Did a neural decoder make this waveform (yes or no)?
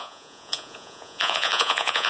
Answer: yes